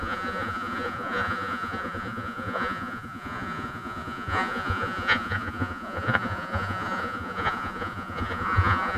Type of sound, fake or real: fake